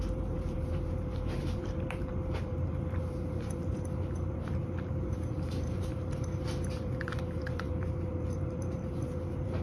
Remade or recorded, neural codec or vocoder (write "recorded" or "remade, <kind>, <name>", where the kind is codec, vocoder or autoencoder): remade, vocoder, BigVGAN v2